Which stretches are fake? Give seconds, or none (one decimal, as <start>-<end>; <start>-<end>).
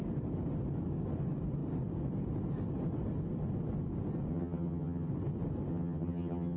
4.3-5.1; 5.7-6.6